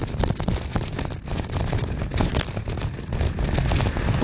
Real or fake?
real